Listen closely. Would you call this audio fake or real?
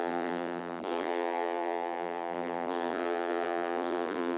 fake